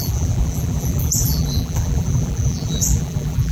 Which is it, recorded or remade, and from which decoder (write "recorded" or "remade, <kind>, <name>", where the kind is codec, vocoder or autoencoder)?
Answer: remade, vocoder, BigVGAN v2